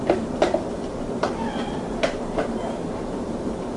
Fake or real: fake